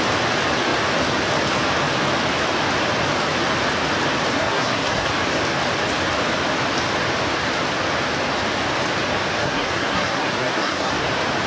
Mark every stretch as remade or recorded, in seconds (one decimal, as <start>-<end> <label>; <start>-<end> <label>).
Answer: 0.0-4.4 recorded; 4.4-5.1 remade; 5.1-9.4 recorded; 9.4-10.9 remade; 10.9-11.5 recorded